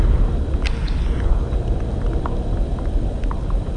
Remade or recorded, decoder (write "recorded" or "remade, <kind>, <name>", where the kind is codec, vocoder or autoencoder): recorded